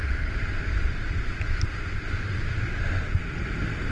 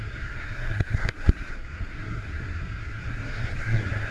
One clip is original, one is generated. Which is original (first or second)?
first